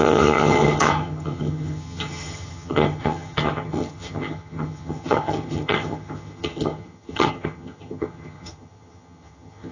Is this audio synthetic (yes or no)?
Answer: yes